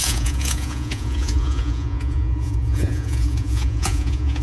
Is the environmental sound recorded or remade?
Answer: remade